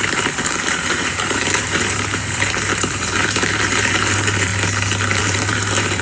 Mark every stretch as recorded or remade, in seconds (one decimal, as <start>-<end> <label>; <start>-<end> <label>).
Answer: 0.0-4.5 remade; 4.5-5.2 recorded; 5.2-6.0 remade